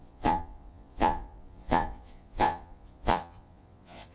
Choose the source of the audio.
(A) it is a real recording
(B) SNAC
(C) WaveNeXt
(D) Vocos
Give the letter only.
D